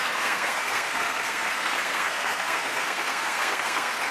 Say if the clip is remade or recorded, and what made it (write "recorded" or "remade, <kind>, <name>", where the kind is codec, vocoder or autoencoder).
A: remade, codec, SNAC